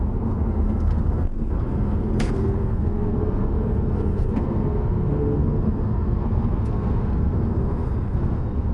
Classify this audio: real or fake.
fake